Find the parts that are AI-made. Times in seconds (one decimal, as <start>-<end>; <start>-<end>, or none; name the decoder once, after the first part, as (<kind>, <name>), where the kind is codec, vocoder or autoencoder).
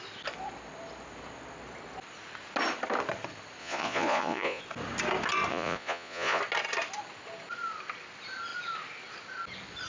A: 3.6-4.6 (vocoder, Vocos); 5.5-6.4